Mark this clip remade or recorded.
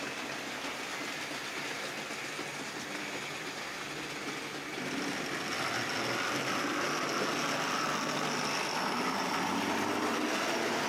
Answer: recorded